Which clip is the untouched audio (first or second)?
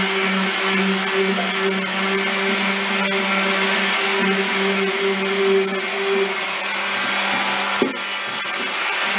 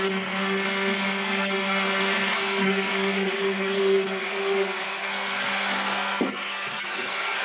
first